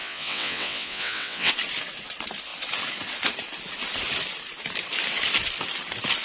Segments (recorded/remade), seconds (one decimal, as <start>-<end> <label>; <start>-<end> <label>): 0.0-1.5 remade; 1.5-6.2 recorded